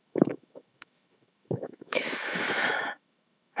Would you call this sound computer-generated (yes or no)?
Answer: yes